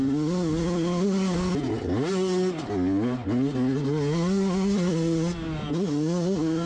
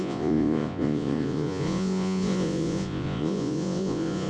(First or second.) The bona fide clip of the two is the first